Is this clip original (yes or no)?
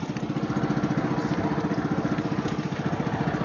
yes